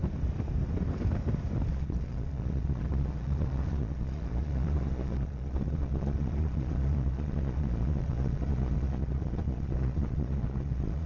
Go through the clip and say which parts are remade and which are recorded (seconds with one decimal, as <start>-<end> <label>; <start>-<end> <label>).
0.0-1.7 recorded; 1.7-11.1 remade